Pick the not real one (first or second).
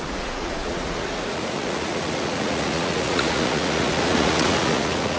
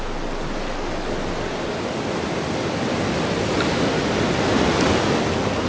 first